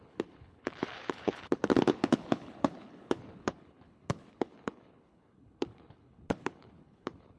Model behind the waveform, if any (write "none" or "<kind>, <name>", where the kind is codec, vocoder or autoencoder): codec, HILCodec